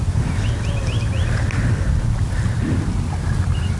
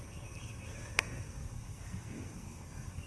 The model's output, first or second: second